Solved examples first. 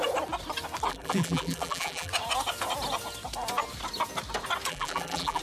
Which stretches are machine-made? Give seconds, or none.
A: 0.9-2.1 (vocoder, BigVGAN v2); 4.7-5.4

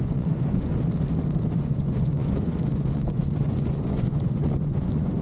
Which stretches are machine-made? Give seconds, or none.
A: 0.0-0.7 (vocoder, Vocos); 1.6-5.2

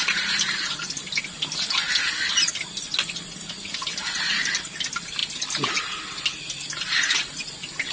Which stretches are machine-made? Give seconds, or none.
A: none

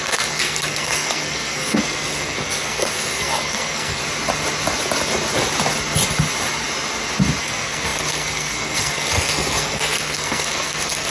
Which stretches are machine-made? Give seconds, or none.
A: 0.0-4.0 (codec, SNAC); 7.4-11.1